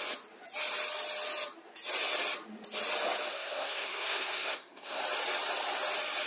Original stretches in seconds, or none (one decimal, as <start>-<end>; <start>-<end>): 0.0-3.3; 5.0-6.3